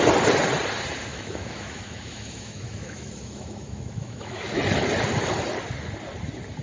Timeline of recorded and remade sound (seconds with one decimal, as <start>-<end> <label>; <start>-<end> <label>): 0.0-1.1 recorded; 1.1-4.6 remade; 4.6-6.6 recorded